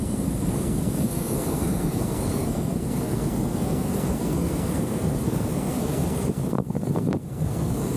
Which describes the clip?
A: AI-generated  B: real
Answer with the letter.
A